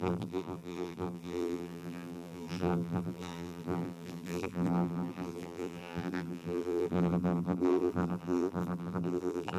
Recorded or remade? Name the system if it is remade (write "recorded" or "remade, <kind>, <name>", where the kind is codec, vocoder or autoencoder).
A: remade, vocoder, BigVGAN v2